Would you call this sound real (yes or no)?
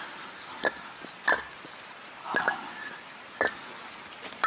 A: yes